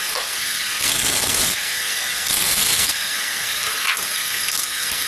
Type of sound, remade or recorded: remade